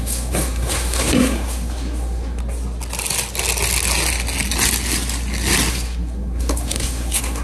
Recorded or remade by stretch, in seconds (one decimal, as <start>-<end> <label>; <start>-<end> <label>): 0.0-2.4 remade; 2.4-5.7 recorded; 5.7-7.4 remade